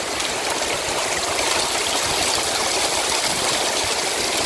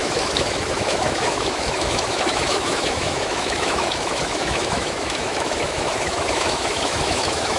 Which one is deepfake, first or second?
second